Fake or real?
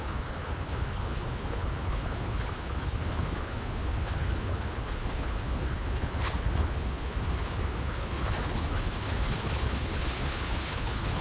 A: fake